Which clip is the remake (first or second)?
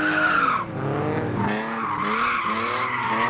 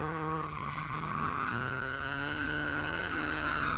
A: second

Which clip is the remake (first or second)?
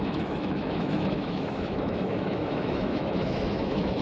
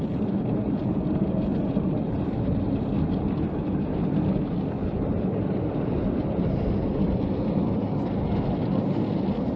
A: first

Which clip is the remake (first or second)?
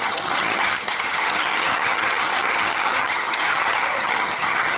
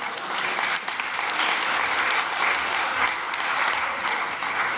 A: first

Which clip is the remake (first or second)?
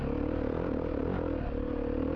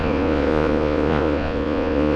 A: second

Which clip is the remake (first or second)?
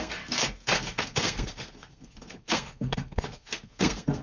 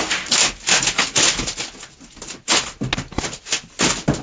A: first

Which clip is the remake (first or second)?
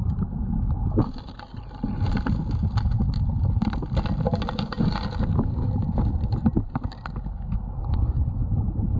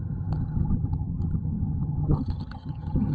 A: second